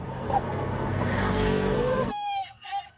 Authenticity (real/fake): fake